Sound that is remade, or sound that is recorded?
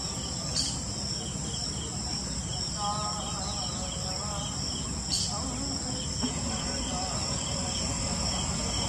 recorded